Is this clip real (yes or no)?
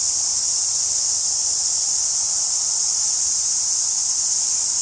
yes